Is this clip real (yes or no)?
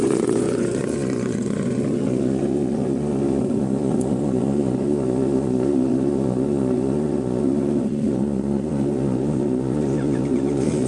no